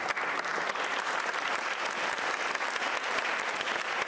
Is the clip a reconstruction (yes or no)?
no